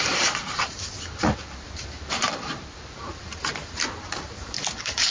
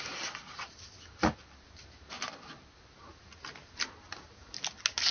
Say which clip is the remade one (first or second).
first